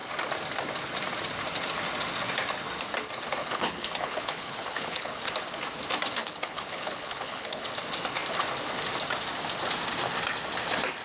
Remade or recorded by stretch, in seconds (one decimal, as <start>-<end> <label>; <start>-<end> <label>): 0.0-3.4 recorded; 3.4-5.3 remade; 5.3-6.2 recorded; 6.2-7.6 remade; 7.6-11.0 recorded